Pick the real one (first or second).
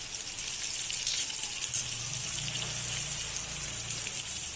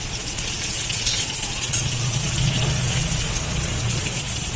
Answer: first